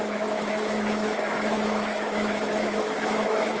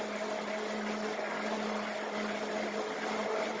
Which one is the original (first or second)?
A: second